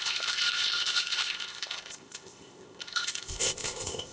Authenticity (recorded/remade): remade